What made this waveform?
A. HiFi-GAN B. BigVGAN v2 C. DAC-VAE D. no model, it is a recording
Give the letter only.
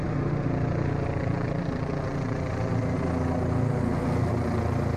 D